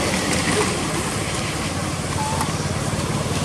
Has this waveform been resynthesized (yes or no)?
no